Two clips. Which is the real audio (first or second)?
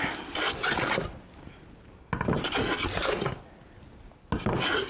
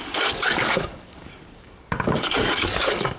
first